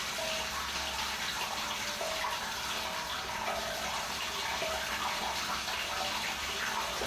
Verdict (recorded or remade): recorded